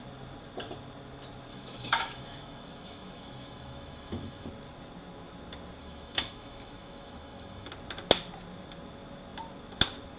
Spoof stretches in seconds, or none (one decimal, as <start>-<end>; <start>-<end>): 1.5-4.5; 5.8-7.7